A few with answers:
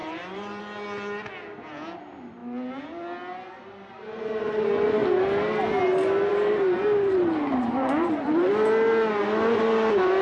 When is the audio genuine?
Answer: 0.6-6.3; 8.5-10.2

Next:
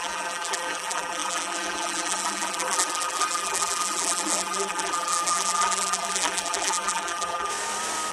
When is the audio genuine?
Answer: 7.5-8.1